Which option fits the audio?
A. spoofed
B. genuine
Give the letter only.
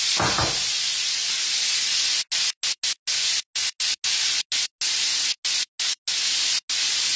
B